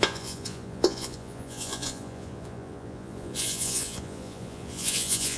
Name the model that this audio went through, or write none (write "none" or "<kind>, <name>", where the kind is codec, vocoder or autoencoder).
vocoder, Vocos